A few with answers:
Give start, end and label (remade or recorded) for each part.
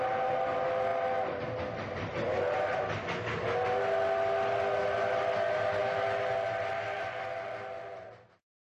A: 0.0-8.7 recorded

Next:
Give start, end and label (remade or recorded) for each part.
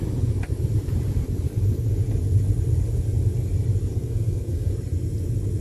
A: 0.0-3.9 recorded; 3.9-4.7 remade; 4.7-5.6 recorded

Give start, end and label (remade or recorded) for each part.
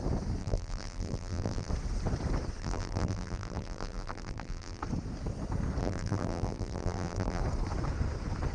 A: 0.0-0.4 recorded; 0.4-1.7 remade; 1.7-2.6 recorded; 2.6-4.8 remade; 4.8-5.8 recorded; 5.8-7.4 remade; 7.4-8.5 recorded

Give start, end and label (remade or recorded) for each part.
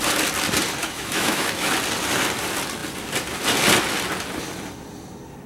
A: 0.0-0.8 recorded; 0.8-1.7 remade; 1.7-5.5 recorded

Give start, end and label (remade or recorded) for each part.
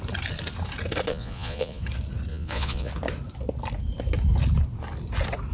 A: 0.0-1.1 recorded; 1.1-1.8 remade; 1.8-2.3 recorded; 2.3-2.9 remade; 2.9-5.5 recorded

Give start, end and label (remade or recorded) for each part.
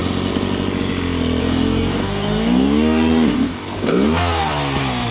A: 0.0-1.4 recorded; 1.4-4.5 remade; 4.5-5.1 recorded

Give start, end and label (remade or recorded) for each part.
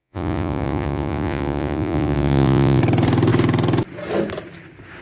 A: 0.0-2.8 remade; 2.8-5.0 recorded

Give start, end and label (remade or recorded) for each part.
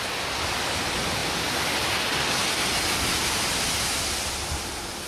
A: 0.0-5.1 recorded